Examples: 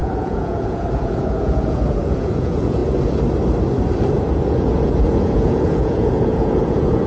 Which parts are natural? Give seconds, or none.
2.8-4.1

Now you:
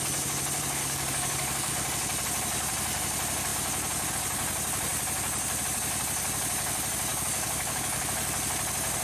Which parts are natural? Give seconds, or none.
0.0-0.8; 1.7-7.1; 8.1-9.0

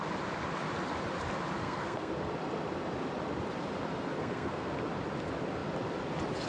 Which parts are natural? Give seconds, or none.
0.0-1.6; 2.1-4.2; 4.7-6.5

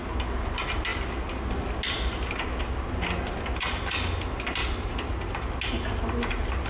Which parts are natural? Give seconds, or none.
0.0-6.7

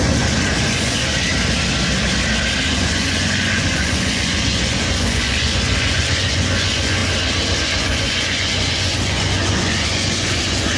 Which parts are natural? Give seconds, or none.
1.3-2.7; 7.0-7.6